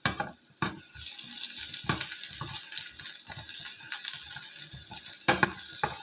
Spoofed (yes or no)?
no